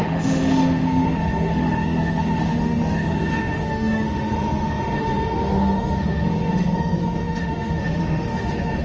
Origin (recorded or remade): remade